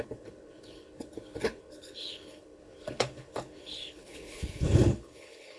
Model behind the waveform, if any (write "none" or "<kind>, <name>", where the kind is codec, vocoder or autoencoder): codec, HILCodec